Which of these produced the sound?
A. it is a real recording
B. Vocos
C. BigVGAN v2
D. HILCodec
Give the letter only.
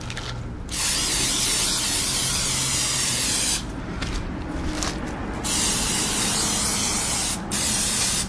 A